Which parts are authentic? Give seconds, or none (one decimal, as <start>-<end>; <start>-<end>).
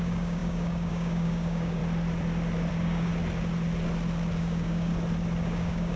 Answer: 1.8-2.7; 3.1-4.4; 4.9-5.4